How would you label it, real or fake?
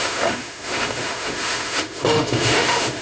fake